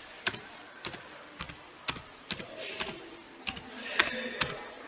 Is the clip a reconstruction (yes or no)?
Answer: no